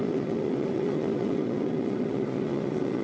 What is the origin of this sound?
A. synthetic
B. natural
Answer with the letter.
A